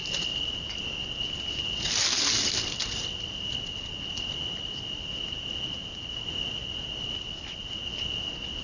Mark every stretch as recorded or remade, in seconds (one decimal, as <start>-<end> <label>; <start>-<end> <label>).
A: 0.0-8.6 recorded